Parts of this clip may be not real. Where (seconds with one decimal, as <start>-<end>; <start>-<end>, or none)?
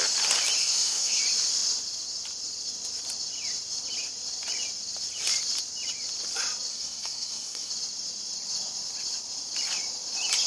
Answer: 0.6-1.2; 6.7-7.7